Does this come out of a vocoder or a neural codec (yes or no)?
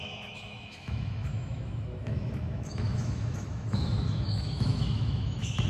yes